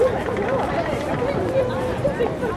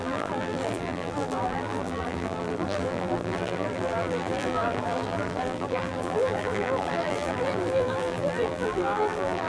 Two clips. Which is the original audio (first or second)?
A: first